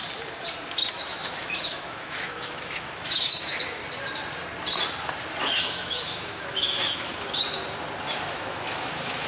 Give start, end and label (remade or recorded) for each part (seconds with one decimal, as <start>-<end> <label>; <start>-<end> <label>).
0.0-0.9 recorded; 0.9-3.8 remade; 3.8-5.6 recorded; 5.6-7.1 remade; 7.1-8.3 recorded; 8.3-9.3 remade